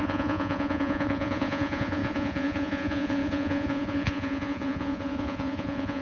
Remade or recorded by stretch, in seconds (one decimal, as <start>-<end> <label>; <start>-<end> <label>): 0.0-6.0 remade